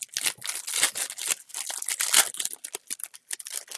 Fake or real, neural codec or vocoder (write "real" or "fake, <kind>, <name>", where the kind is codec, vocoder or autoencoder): real